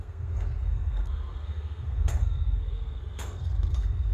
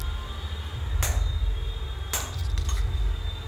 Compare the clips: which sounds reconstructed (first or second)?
first